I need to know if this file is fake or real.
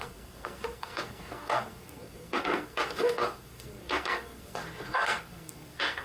fake